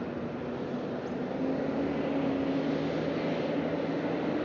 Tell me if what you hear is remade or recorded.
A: recorded